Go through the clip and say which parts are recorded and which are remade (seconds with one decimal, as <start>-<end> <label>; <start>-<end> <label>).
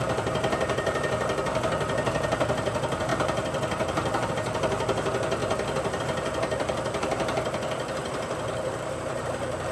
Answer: 0.0-5.4 remade; 5.4-6.0 recorded; 6.0-9.7 remade